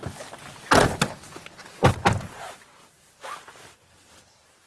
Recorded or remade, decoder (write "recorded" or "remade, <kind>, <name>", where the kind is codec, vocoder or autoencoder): recorded